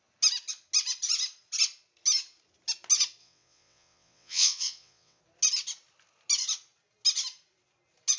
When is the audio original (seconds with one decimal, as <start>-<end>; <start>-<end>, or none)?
0.0-3.2; 5.2-8.2